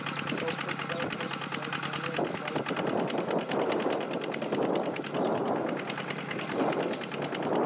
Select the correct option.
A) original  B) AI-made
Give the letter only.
A